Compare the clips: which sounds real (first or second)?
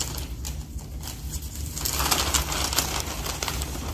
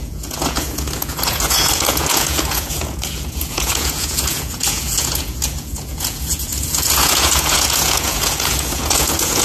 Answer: first